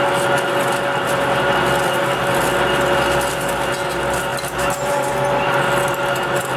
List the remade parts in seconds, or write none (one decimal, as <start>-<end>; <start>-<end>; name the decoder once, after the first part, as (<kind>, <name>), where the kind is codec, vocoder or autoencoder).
none